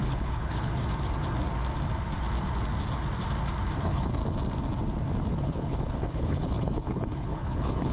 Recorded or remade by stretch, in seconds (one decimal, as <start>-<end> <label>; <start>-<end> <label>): 0.0-0.8 remade; 0.8-3.8 recorded; 3.8-4.2 remade; 4.2-5.3 recorded; 5.3-7.9 remade

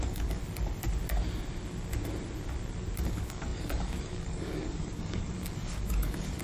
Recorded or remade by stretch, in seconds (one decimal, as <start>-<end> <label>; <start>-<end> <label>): 0.0-0.4 remade; 0.4-3.0 recorded; 3.0-6.4 remade

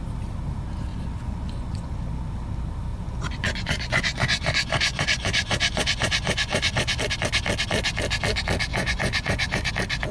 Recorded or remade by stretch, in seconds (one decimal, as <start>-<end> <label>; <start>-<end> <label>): 0.0-0.9 recorded; 0.9-2.2 remade; 2.2-2.9 recorded; 2.9-7.0 remade; 7.0-8.7 recorded; 8.7-9.7 remade; 9.7-10.1 recorded

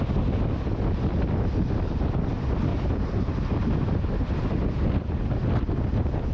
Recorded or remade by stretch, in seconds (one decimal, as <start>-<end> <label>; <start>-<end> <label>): 0.0-2.7 recorded; 2.7-3.3 remade; 3.3-6.3 recorded

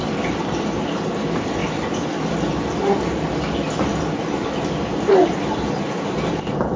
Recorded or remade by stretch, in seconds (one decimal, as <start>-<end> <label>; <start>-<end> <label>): 0.0-1.6 remade; 1.6-4.2 recorded; 4.2-6.8 remade

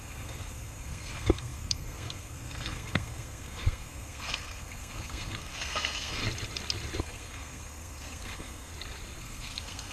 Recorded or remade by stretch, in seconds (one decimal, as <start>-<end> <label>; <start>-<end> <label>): 0.0-6.2 remade; 6.2-7.0 recorded; 7.0-8.7 remade; 8.7-9.2 recorded; 9.2-9.9 remade

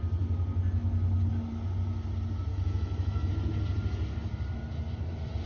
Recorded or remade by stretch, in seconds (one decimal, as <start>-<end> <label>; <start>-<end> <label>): 0.0-2.5 recorded; 2.5-3.3 remade; 3.3-5.5 recorded